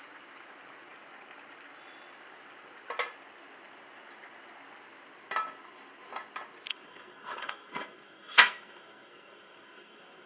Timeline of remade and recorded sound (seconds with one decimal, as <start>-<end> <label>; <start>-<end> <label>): 0.0-6.7 recorded; 6.7-10.3 remade